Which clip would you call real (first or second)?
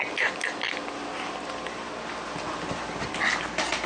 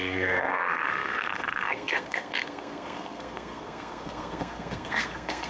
first